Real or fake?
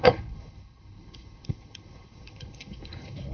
fake